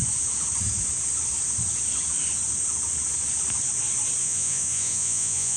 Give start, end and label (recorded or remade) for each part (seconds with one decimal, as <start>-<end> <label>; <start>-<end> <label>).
0.0-4.2 recorded; 4.2-5.6 remade